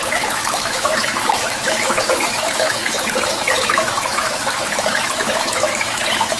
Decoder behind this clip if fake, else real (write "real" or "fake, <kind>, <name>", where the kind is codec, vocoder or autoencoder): fake, autoencoder, DAC-VAE